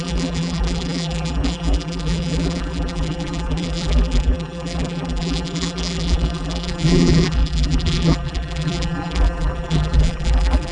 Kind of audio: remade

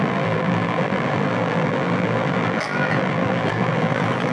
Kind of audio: remade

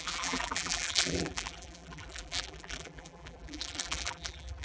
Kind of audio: remade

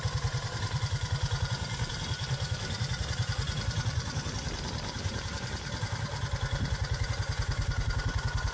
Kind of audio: remade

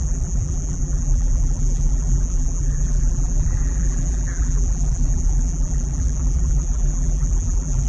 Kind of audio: remade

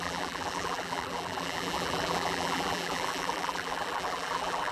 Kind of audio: remade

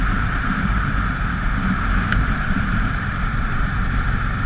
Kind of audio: remade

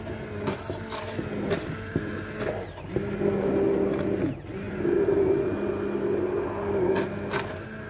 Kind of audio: recorded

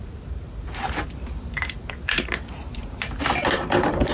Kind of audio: remade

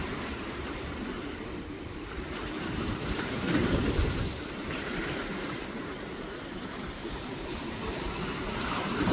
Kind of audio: remade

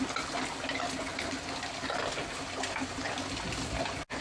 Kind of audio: recorded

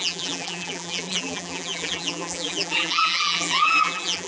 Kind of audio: remade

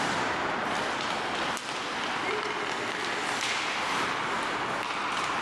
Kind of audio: remade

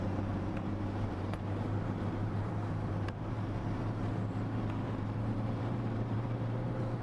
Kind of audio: remade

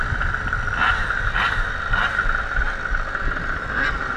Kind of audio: recorded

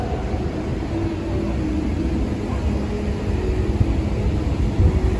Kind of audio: recorded